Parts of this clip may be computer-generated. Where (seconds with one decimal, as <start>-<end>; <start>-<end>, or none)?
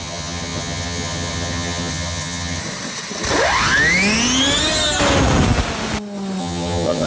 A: 0.0-2.6; 6.4-7.1